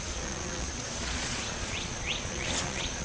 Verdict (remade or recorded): remade